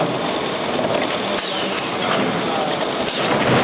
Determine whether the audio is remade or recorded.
recorded